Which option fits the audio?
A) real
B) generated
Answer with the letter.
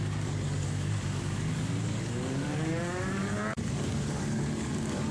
B